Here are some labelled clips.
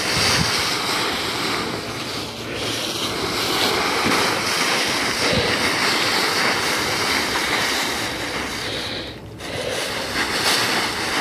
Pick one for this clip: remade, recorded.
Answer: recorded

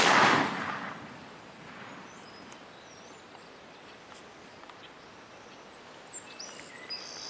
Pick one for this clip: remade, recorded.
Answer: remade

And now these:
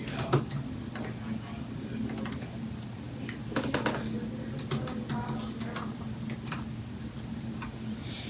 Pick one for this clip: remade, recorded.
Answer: recorded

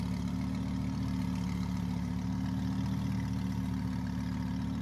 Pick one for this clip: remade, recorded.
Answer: recorded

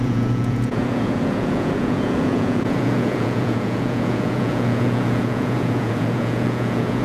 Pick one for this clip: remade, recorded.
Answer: remade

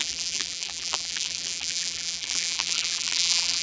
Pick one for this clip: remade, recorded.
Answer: remade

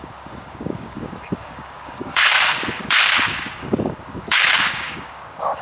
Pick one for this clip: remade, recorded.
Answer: remade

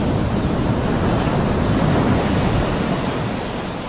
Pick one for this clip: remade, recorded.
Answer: recorded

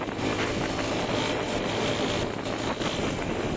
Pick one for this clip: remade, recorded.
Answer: recorded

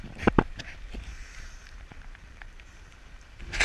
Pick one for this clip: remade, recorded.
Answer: remade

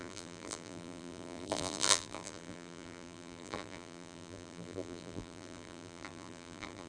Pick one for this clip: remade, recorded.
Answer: remade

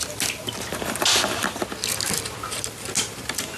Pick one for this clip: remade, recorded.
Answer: recorded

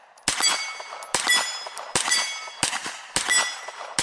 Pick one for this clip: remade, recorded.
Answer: recorded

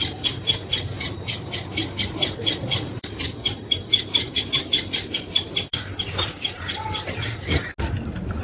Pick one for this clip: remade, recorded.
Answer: recorded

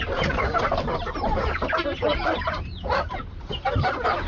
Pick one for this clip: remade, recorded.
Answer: remade